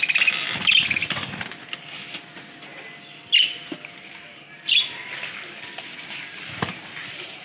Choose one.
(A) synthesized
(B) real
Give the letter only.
B